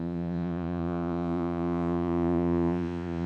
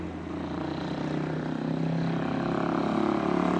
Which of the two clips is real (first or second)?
second